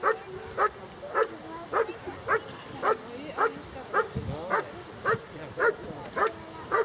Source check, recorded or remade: recorded